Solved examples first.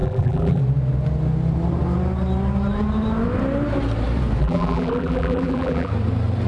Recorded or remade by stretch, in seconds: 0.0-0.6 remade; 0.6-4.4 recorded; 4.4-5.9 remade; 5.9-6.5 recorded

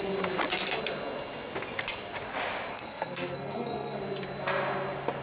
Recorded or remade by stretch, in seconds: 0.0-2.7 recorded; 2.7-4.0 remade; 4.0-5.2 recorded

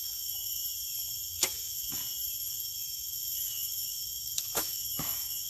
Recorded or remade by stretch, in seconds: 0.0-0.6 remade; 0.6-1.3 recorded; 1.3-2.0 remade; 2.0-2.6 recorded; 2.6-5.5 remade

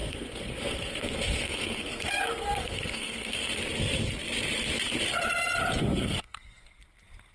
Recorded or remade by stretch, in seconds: 0.0-3.6 remade; 3.6-5.8 recorded; 5.8-6.8 remade; 6.8-7.3 recorded

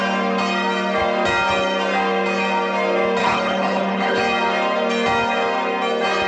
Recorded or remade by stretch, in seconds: 0.0-3.2 recorded; 3.2-4.2 remade; 4.2-6.3 recorded

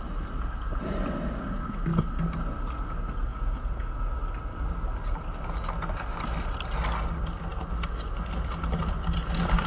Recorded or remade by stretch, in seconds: 0.0-3.3 recorded; 3.3-4.1 remade; 4.1-9.7 recorded

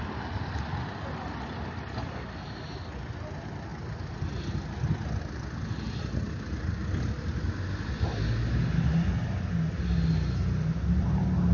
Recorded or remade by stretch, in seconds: 0.0-11.5 recorded